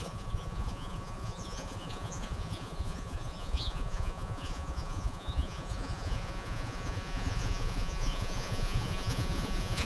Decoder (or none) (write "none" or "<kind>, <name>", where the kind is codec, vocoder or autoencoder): vocoder, Vocos